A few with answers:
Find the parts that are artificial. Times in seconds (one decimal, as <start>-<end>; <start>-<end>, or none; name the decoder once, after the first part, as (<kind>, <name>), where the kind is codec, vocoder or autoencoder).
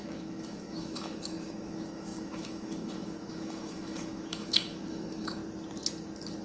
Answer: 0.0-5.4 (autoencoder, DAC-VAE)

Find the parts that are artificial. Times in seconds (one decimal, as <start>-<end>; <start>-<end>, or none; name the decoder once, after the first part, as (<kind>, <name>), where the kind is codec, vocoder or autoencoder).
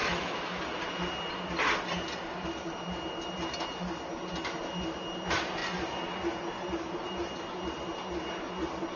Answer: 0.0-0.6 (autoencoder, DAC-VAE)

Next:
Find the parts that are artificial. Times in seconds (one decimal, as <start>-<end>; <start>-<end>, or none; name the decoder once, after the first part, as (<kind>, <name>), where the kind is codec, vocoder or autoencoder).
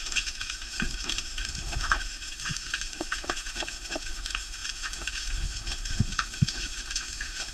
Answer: 0.0-7.5 (autoencoder, DAC-VAE)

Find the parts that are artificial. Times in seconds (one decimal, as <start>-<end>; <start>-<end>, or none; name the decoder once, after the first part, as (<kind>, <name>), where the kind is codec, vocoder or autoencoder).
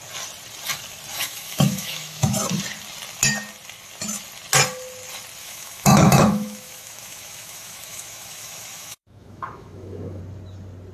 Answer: 1.1-2.4 (autoencoder, DAC-VAE); 5.4-10.2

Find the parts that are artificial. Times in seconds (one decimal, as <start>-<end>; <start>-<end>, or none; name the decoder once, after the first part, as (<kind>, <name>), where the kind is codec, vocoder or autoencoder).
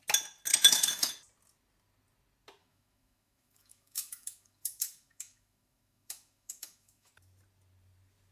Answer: 0.5-1.1 (autoencoder, DAC-VAE); 2.6-7.1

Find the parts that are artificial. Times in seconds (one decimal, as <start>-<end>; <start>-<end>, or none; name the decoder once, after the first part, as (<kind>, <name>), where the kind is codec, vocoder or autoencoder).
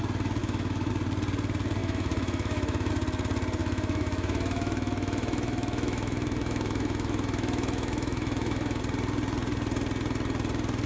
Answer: 0.4-0.9 (autoencoder, DAC-VAE); 1.8-2.9; 3.6-8.8